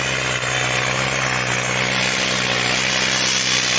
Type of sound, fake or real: real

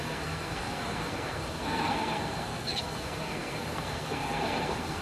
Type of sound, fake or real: fake